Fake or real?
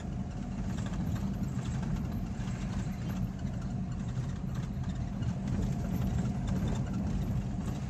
real